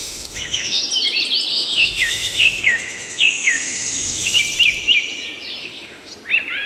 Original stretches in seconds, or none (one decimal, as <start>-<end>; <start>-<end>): 0.8-1.5; 4.4-5.6; 6.1-6.7